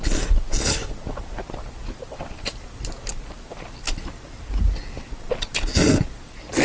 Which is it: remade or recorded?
recorded